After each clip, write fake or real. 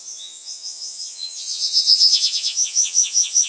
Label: fake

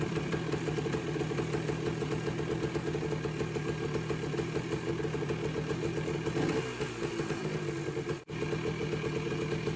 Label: real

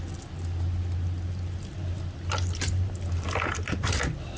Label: real